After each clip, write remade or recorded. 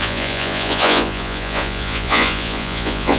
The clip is remade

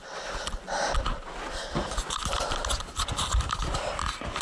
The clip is recorded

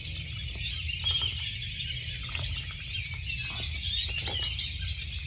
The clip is recorded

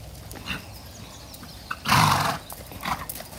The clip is recorded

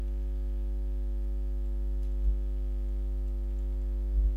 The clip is recorded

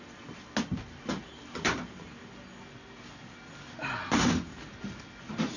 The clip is recorded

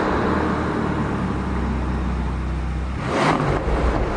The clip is recorded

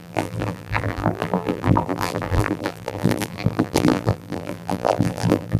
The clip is remade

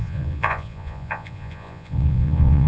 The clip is remade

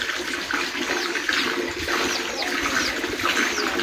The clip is recorded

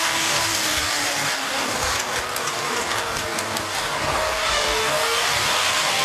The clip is remade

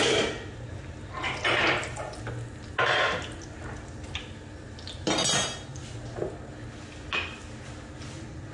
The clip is recorded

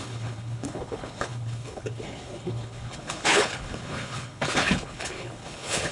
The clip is remade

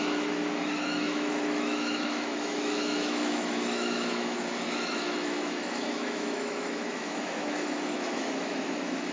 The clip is remade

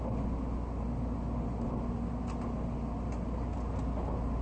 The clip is recorded